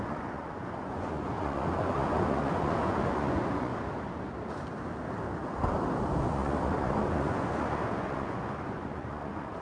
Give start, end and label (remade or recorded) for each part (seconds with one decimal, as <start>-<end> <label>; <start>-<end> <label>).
0.0-3.7 remade; 3.7-6.2 recorded; 6.2-9.6 remade